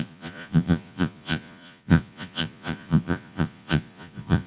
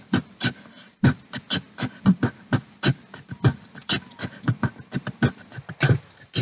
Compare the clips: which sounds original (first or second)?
second